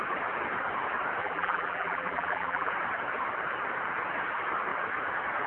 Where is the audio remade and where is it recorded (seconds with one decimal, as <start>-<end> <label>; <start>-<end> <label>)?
0.0-1.2 recorded; 1.2-2.7 remade; 2.7-5.5 recorded